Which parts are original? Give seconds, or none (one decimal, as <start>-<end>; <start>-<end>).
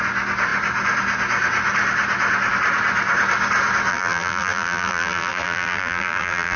0.0-3.9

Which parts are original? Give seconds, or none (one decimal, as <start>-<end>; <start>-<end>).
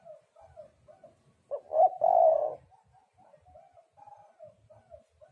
0.0-5.3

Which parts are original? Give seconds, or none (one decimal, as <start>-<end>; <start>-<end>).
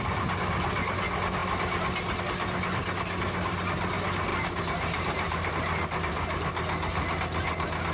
0.0-4.3; 5.5-7.9